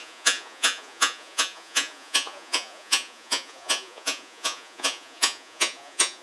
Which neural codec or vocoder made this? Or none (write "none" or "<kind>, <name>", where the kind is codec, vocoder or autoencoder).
vocoder, Vocos